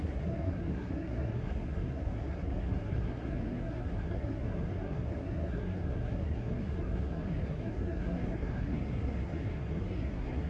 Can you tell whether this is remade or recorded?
remade